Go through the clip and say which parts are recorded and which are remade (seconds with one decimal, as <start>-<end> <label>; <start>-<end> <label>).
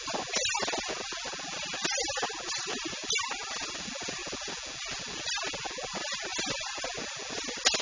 0.0-7.8 recorded